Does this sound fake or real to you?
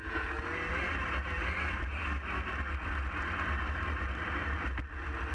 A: real